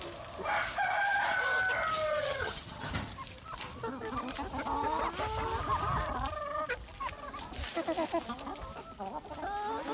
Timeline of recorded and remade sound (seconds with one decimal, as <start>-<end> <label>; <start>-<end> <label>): 0.0-2.1 recorded; 2.1-2.9 remade; 2.9-9.9 recorded

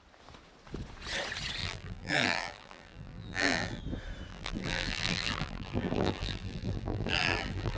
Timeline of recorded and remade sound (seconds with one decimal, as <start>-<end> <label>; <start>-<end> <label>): 0.0-1.6 recorded; 1.6-3.8 remade; 3.8-4.3 recorded; 4.3-7.8 remade

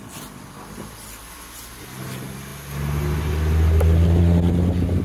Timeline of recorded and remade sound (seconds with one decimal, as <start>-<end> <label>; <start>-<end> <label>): 0.0-5.0 recorded

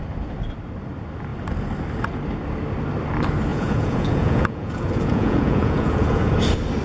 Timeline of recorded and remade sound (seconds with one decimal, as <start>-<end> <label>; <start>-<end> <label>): 0.0-3.5 recorded; 3.5-6.3 remade; 6.3-6.8 recorded

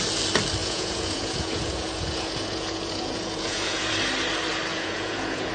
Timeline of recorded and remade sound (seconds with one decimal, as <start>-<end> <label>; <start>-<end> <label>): 0.0-0.6 recorded; 0.6-3.9 remade; 3.9-4.7 recorded; 4.7-5.5 remade